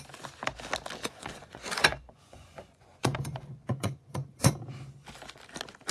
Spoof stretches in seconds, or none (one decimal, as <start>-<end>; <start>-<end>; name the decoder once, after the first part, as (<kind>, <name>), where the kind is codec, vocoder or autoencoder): 1.0-4.5 (vocoder, Vocos)